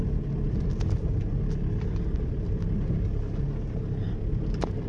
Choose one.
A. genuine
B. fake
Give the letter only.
A